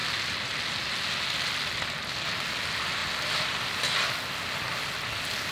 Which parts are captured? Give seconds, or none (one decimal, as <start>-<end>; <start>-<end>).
0.9-3.0; 3.9-5.5